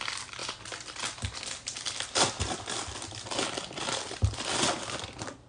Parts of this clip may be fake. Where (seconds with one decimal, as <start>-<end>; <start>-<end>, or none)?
none